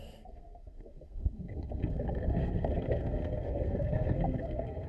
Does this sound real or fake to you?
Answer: fake